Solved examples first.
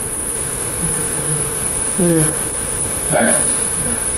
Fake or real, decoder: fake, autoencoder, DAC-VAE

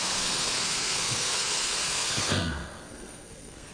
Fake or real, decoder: fake, codec, SNAC